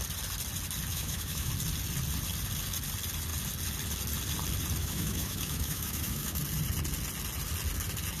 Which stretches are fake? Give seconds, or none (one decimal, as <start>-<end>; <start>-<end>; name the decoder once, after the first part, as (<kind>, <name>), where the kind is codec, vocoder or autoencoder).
0.9-1.5 (autoencoder, DAC-VAE); 4.8-6.4